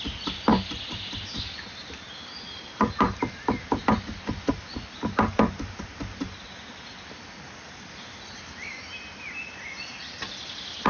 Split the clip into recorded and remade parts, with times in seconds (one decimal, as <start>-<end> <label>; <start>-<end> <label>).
0.0-10.9 recorded